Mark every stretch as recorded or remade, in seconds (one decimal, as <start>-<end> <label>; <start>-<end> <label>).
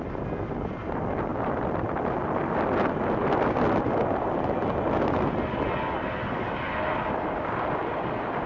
0.0-8.5 recorded